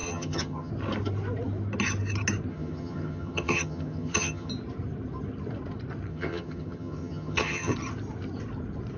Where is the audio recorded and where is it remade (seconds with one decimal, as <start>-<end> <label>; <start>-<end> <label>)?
0.0-0.7 remade; 0.7-2.5 recorded; 2.5-4.5 remade; 4.5-6.1 recorded; 6.1-7.7 remade; 7.7-9.0 recorded